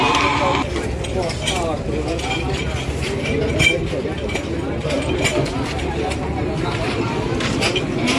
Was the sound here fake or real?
real